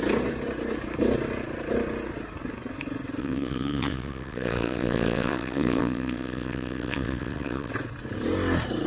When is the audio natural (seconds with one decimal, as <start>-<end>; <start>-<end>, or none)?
0.0-3.2; 7.7-8.9